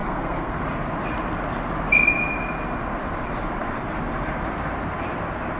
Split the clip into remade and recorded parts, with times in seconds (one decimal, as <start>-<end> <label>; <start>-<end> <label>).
0.0-0.6 remade; 0.6-5.6 recorded